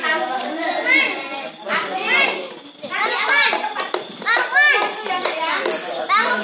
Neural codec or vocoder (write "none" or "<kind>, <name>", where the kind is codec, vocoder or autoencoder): none